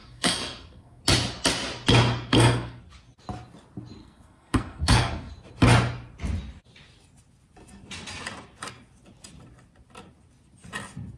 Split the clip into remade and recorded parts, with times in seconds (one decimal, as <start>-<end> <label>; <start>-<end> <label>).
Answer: 0.0-1.0 remade; 1.0-2.3 recorded; 2.3-2.8 remade; 2.8-4.0 recorded; 4.0-5.3 remade; 5.3-11.2 recorded